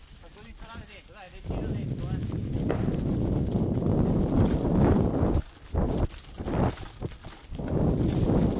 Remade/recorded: recorded